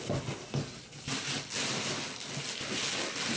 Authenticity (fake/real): real